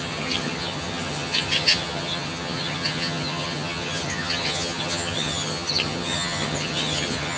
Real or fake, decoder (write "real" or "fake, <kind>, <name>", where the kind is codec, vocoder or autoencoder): fake, vocoder, HiFi-GAN